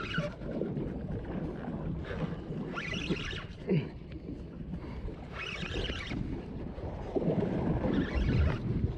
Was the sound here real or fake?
real